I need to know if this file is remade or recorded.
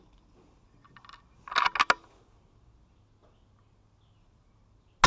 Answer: recorded